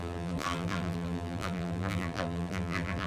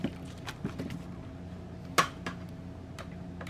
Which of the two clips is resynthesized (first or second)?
first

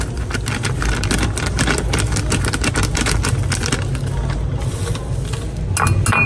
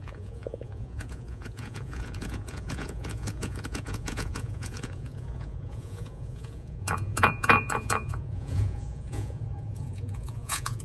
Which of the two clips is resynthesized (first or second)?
second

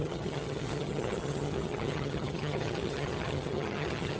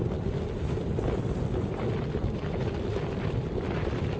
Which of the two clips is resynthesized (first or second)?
first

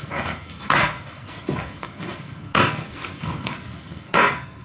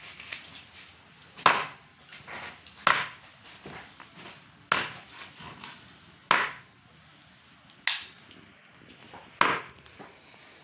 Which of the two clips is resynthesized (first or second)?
first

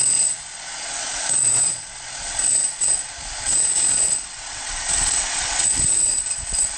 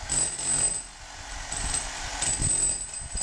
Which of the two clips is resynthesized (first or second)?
first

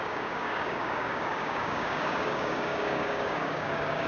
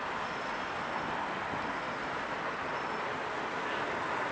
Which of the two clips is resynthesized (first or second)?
first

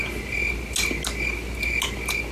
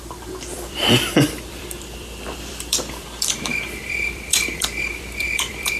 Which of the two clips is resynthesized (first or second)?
second